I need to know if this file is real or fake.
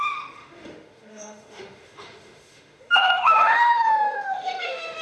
fake